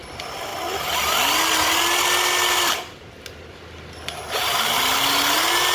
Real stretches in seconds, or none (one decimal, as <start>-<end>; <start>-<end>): 0.0-5.7